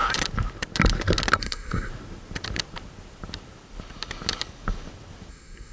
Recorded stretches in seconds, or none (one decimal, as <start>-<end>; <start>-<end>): 0.0-1.4; 1.9-5.3